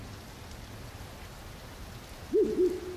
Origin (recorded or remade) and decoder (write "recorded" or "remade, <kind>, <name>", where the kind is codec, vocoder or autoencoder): recorded